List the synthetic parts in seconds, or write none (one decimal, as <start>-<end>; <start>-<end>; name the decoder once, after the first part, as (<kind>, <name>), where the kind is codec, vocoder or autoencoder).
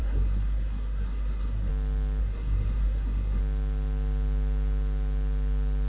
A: 0.0-1.7 (codec, SNAC); 2.2-3.4